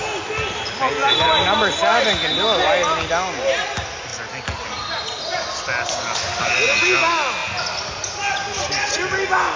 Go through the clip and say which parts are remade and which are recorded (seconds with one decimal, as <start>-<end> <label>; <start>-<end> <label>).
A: 0.0-9.6 recorded